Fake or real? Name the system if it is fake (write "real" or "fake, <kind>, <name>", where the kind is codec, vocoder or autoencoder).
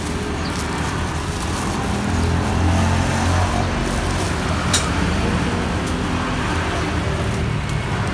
real